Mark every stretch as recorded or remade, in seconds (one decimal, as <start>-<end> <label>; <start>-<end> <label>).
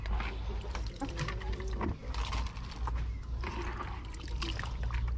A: 0.0-5.2 recorded